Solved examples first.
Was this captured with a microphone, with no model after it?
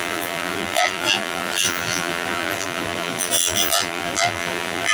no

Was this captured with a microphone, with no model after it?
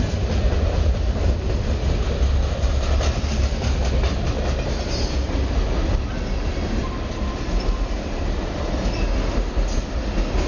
yes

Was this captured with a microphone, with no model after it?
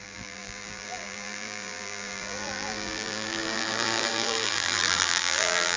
no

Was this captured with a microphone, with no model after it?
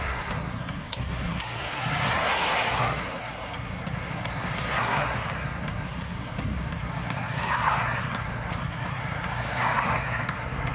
no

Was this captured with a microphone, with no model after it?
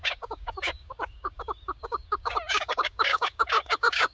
no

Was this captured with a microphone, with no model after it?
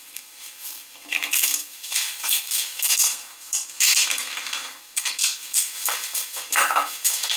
no